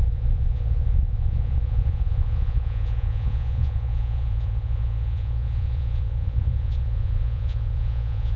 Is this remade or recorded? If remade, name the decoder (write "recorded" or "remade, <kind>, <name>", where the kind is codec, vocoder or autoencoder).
remade, vocoder, Vocos